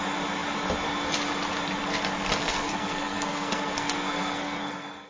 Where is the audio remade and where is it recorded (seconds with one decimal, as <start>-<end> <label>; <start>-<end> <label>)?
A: 0.0-2.4 recorded; 2.4-5.1 remade